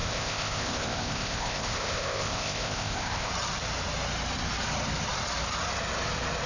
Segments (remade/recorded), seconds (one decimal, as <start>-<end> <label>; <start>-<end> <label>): 0.0-3.3 remade; 3.3-6.5 recorded